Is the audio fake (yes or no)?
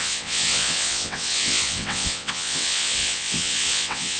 yes